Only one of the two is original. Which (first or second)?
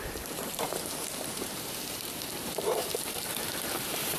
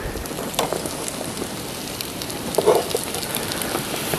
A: second